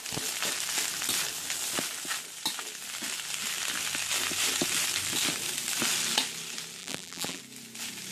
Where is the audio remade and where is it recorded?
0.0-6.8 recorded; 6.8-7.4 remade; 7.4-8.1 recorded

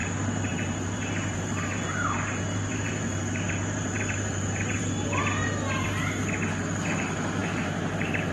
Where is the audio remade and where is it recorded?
0.0-5.0 remade; 5.0-7.4 recorded; 7.4-8.3 remade

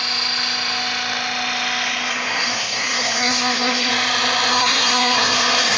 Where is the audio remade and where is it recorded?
0.0-2.1 recorded; 2.1-3.9 remade; 3.9-4.5 recorded; 4.5-5.8 remade

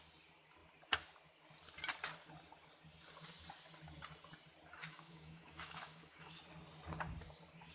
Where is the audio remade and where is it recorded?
0.0-4.8 recorded; 4.8-6.4 remade; 6.4-7.7 recorded

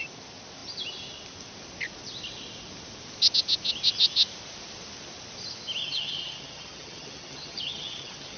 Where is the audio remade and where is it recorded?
0.0-5.8 recorded; 5.8-8.4 remade

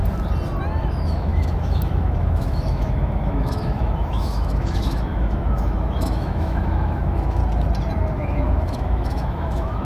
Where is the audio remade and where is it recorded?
0.0-0.8 recorded; 0.8-7.4 remade; 7.4-8.1 recorded; 8.1-9.8 remade

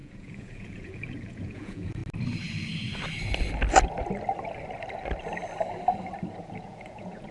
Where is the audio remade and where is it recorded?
0.0-2.0 remade; 2.0-6.4 recorded; 6.4-7.3 remade